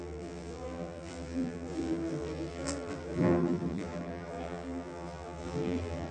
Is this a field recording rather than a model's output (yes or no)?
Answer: no